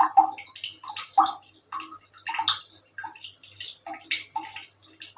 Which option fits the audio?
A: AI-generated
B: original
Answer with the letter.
B